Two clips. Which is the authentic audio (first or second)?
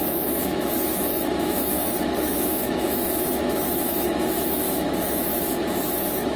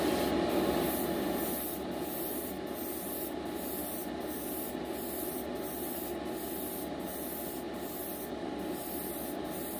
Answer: second